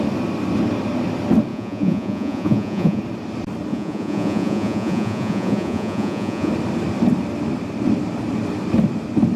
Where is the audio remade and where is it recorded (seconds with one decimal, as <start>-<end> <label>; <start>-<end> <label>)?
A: 0.0-1.5 recorded; 1.5-3.0 remade; 3.0-3.7 recorded; 3.7-6.5 remade; 6.5-9.4 recorded